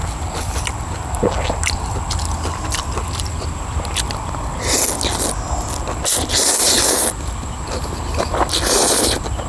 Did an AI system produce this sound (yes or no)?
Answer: no